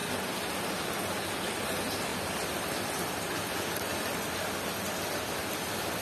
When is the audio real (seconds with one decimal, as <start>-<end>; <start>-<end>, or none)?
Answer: 0.0-6.0